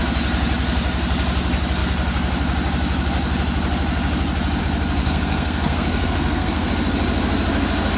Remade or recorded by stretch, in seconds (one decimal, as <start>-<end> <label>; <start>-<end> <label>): 0.0-5.0 recorded; 5.0-6.7 remade; 6.7-8.0 recorded